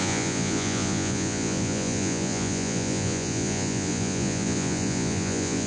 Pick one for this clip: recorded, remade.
remade